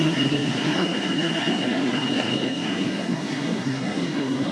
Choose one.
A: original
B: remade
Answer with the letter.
B